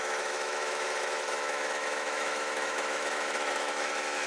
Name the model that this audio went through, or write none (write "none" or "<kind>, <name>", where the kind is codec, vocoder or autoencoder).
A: autoencoder, DAC-VAE